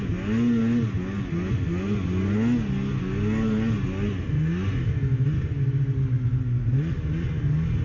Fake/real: real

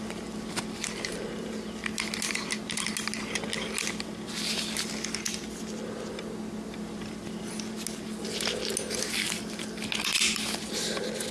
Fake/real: real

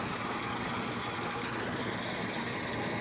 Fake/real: real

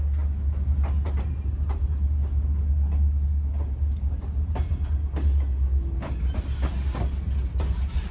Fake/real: real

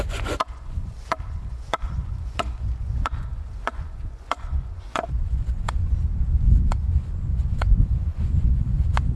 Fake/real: fake